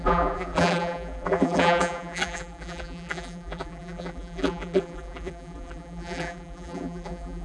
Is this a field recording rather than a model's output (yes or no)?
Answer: no